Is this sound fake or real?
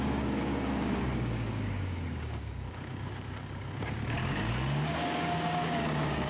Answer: fake